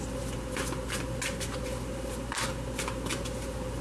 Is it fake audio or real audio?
real